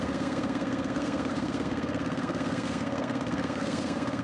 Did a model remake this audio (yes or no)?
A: yes